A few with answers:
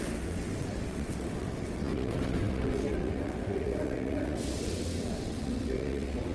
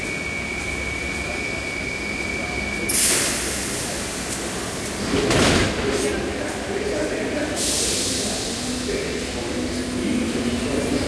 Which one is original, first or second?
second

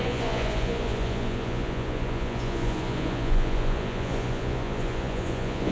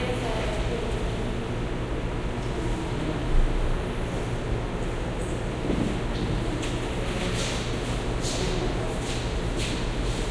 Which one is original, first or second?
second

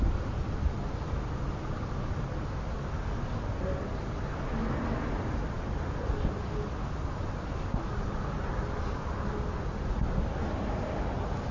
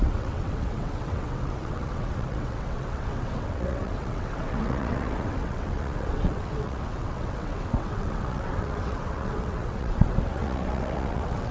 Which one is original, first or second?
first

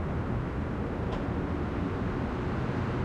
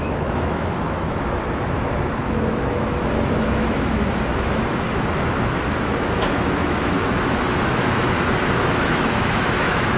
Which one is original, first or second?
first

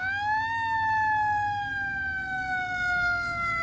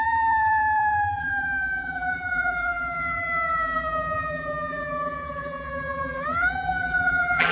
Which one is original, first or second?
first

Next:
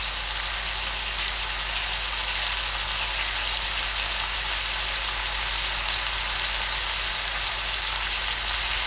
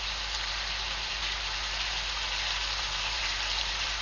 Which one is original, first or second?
first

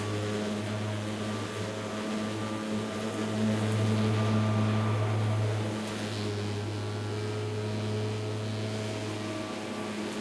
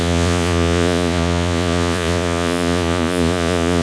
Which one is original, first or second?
first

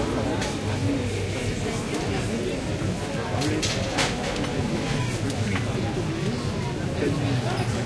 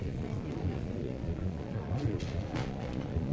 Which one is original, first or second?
first